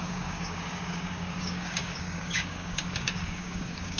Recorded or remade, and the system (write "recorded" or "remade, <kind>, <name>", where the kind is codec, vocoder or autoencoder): remade, codec, DAC